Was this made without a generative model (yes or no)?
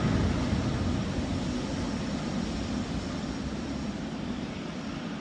yes